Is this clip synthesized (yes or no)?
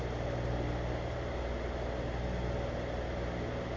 no